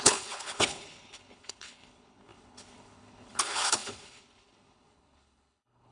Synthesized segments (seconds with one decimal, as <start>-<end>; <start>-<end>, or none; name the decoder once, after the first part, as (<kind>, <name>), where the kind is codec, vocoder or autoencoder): 0.0-5.9 (codec, HILCodec)